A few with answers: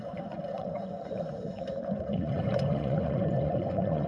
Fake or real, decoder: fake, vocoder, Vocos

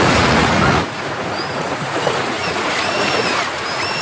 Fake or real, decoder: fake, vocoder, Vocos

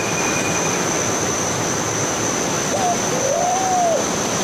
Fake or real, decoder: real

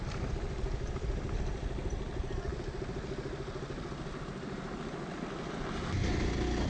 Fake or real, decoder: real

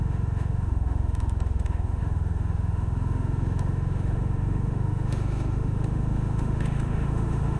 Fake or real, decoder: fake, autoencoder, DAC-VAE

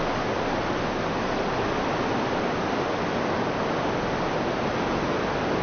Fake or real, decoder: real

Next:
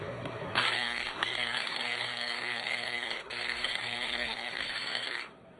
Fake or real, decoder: fake, codec, SNAC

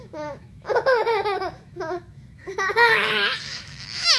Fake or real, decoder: fake, autoencoder, DAC-VAE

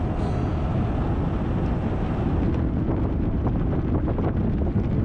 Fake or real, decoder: real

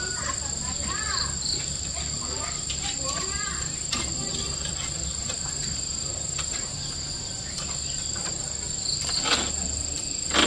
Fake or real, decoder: real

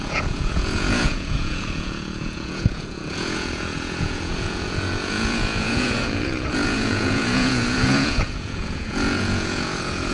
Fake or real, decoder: fake, vocoder, Vocos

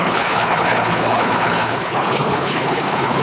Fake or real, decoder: fake, codec, HILCodec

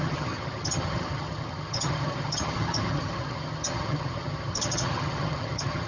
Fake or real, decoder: fake, vocoder, HiFi-GAN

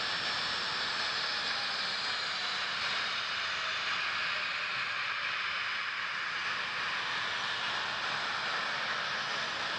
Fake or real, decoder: real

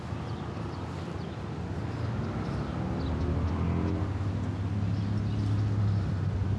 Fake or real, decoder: real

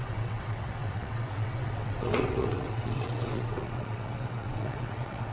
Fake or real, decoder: fake, vocoder, WaveNeXt